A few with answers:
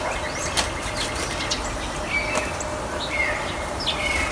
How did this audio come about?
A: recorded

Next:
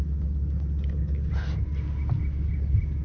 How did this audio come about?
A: recorded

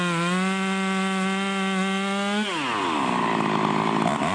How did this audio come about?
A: recorded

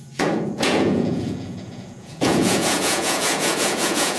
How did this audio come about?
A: remade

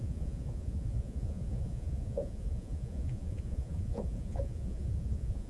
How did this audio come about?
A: remade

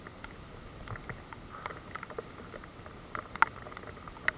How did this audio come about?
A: recorded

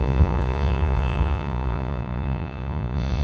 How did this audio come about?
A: remade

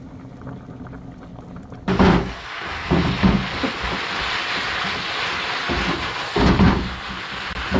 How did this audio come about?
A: recorded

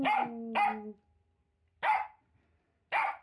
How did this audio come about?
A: recorded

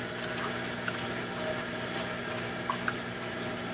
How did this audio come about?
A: recorded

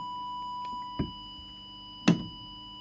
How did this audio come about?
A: recorded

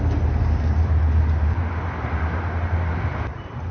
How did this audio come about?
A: recorded